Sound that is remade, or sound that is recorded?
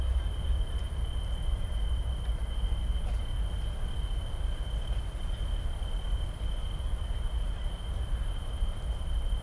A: recorded